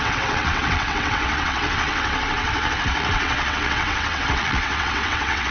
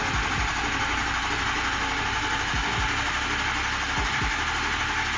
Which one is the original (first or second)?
second